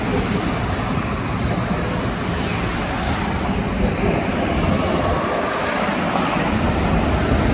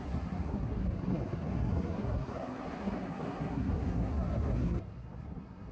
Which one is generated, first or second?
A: second